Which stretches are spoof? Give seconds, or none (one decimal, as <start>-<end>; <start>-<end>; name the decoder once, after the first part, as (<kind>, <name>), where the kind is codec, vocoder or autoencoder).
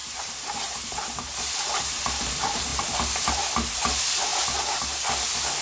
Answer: 0.0-2.2 (vocoder, BigVGAN v2)